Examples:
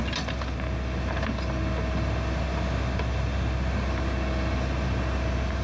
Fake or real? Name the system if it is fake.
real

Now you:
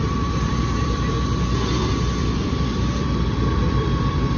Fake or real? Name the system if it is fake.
fake, vocoder, BigVGAN v2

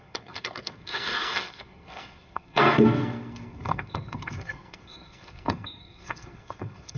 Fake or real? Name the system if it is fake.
fake, codec, SNAC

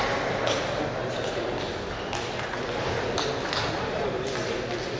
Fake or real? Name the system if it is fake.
real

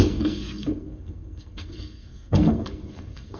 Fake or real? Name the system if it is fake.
fake, codec, SNAC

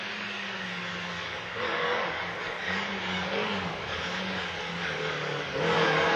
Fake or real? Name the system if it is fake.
fake, codec, DAC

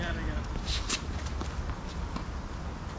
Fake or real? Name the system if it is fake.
real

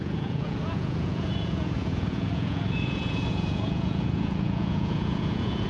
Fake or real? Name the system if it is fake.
fake, vocoder, Vocos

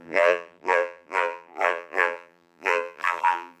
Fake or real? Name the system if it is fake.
fake, vocoder, BigVGAN v2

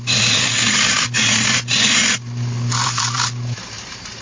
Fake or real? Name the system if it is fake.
real